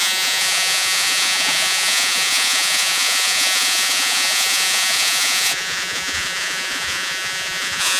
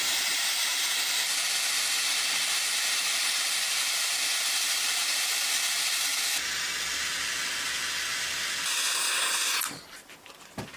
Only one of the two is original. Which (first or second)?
second